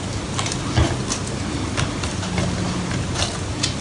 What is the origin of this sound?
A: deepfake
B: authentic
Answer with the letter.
B